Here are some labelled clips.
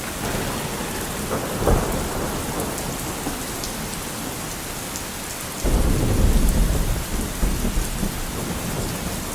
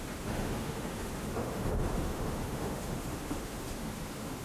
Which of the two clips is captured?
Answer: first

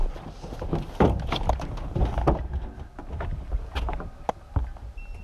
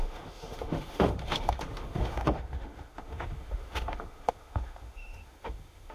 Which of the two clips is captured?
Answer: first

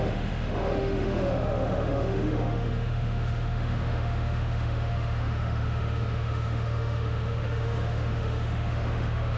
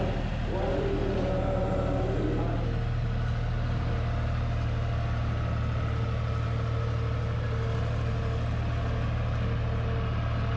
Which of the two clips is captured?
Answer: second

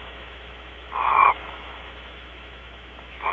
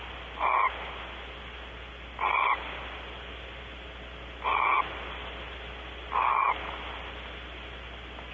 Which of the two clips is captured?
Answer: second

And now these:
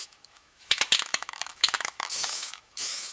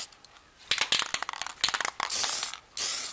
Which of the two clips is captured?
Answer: second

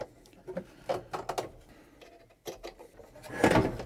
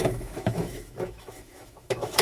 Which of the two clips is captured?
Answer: first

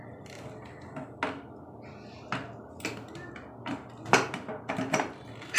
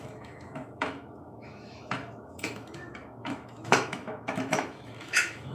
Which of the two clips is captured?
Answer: first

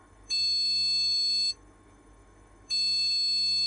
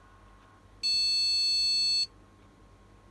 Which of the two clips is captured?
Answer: second